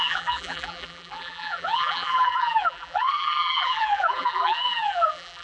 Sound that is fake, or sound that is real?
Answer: fake